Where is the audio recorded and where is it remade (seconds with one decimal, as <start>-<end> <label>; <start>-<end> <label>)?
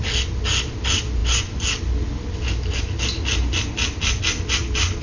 0.0-5.0 recorded